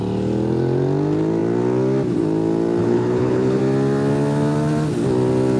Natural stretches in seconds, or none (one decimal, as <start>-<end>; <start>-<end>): 0.0-2.8; 3.6-5.6

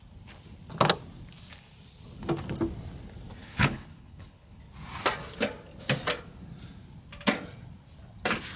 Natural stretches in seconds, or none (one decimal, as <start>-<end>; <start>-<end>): 0.0-3.4; 4.6-8.6

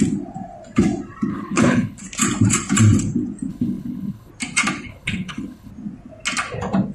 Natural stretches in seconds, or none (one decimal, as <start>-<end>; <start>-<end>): 0.0-1.3; 2.0-3.5; 4.3-4.9; 5.7-6.9

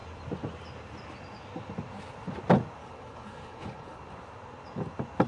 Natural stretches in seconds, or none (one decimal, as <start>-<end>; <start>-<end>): 0.0-2.8; 4.0-5.3

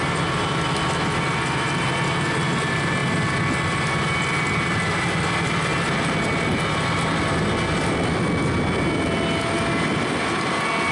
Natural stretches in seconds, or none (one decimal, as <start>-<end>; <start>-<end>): 0.0-10.9